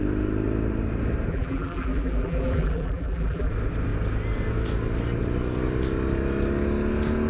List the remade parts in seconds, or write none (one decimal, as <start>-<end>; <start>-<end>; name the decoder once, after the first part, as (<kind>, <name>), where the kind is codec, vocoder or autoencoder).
1.3-3.5 (vocoder, BigVGAN v2)